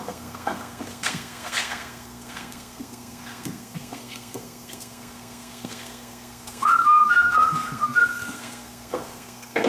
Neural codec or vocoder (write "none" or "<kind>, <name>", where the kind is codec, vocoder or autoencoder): codec, SNAC